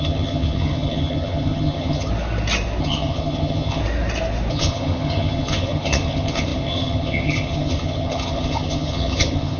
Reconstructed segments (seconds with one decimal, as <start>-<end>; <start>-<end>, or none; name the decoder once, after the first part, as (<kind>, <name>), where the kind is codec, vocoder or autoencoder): 0.0-2.1 (vocoder, HiFi-GAN); 2.8-3.8; 4.5-9.6